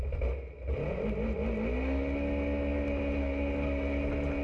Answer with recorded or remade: recorded